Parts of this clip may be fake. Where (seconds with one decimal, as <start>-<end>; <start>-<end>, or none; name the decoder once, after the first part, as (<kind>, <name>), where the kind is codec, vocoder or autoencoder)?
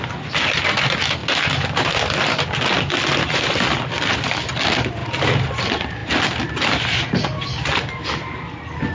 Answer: 5.0-5.5 (vocoder, BigVGAN v2)